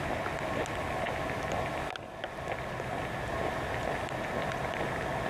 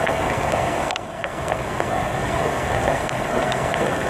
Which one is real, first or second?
first